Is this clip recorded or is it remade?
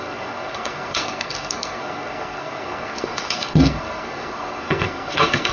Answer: remade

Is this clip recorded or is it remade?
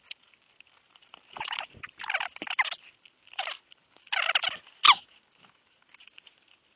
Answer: recorded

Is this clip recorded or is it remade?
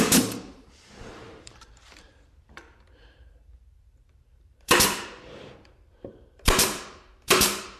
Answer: remade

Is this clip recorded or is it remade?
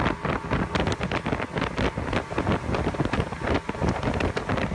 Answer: recorded